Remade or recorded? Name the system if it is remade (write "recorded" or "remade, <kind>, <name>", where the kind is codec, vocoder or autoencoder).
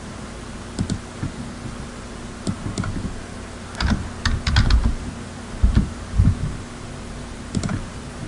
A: recorded